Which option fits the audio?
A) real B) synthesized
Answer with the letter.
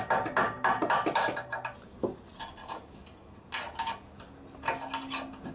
A